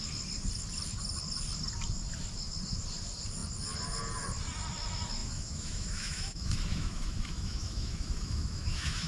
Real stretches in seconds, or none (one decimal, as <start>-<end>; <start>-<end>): 0.0-5.2